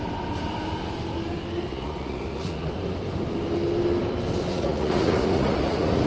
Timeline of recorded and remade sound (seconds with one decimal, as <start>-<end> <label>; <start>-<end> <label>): 0.0-1.7 recorded; 1.7-2.7 remade; 2.7-4.5 recorded; 4.5-6.1 remade